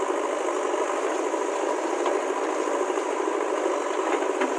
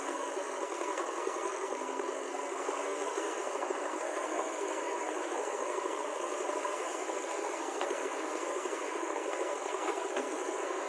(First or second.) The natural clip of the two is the first